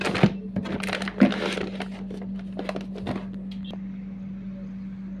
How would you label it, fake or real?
real